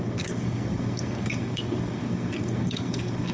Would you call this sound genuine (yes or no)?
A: no